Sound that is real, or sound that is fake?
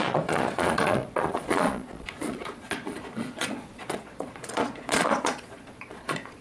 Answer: fake